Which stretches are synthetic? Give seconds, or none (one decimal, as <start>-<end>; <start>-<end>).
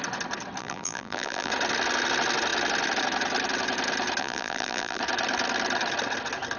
0.6-1.5; 4.2-5.0